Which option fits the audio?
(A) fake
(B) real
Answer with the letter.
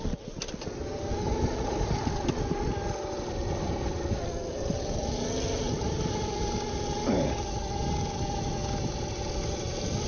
B